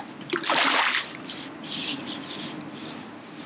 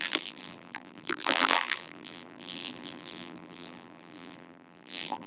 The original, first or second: first